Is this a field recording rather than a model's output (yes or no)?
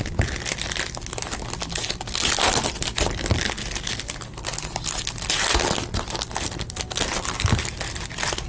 yes